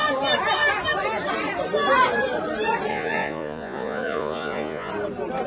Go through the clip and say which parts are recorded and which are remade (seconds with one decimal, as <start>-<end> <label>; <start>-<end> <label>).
0.0-2.9 recorded; 2.9-4.9 remade; 4.9-5.5 recorded